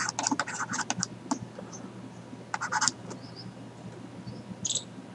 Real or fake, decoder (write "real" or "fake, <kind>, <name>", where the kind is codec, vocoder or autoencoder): real